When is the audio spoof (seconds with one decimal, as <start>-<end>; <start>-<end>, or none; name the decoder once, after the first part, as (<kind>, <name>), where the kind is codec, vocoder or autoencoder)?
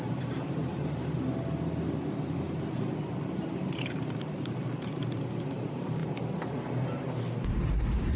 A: 0.0-0.6 (vocoder, BigVGAN v2); 3.8-6.0; 7.1-8.2